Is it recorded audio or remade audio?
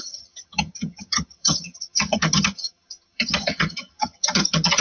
remade